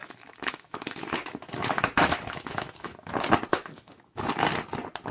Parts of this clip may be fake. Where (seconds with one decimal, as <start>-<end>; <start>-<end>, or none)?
0.0-3.1; 3.5-4.3